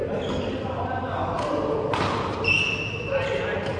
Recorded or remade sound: recorded